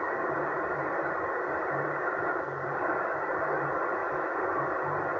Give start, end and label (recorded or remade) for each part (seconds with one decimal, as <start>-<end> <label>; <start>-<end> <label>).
0.0-4.0 recorded; 4.0-4.6 remade; 4.6-5.2 recorded